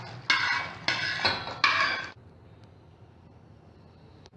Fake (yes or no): no